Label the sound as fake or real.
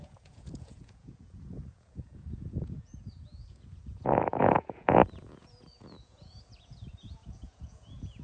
fake